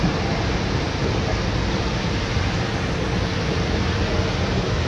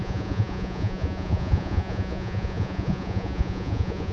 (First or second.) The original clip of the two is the first